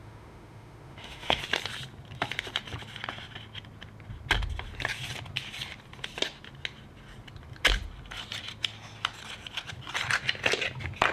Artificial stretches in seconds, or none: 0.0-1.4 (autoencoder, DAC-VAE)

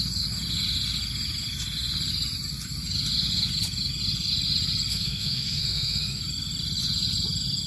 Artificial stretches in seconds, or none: 4.9-6.2 (autoencoder, DAC-VAE)

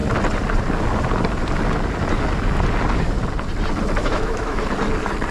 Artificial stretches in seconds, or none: 4.0-4.6 (autoencoder, DAC-VAE)

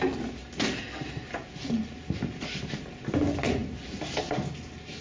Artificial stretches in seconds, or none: none

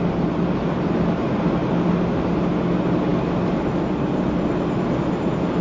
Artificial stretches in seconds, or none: none

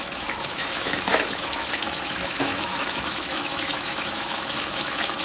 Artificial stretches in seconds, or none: 0.0-5.2 (autoencoder, DAC-VAE)

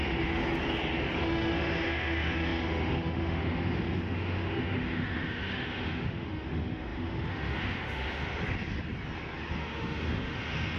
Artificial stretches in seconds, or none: 0.0-0.4 (autoencoder, DAC-VAE); 1.2-8.4; 9.5-10.8

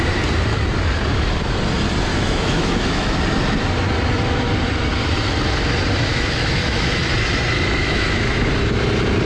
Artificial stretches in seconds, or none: 2.1-3.2 (autoencoder, DAC-VAE); 6.1-7.0; 7.8-8.5